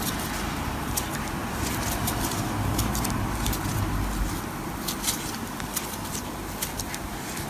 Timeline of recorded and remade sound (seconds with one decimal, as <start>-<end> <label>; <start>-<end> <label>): 0.0-7.5 recorded